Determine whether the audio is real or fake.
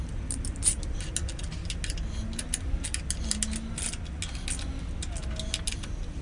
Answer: real